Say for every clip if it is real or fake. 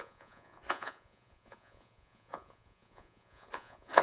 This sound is fake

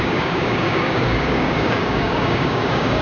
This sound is fake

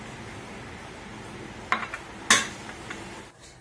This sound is real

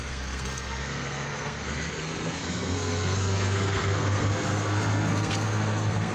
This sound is fake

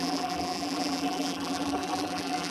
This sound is fake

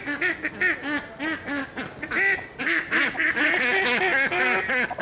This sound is real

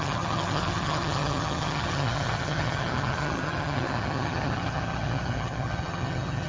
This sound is fake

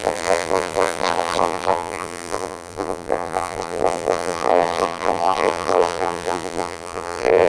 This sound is fake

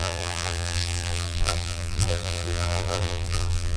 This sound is fake